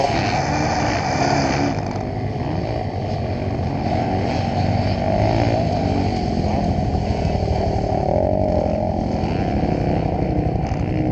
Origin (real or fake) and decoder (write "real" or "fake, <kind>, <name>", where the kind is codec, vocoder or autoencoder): real